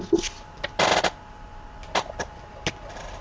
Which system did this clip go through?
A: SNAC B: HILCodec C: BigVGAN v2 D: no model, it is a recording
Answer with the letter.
D